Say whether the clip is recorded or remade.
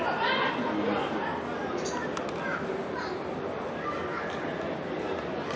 recorded